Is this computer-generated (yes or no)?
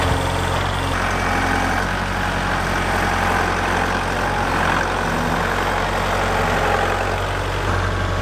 no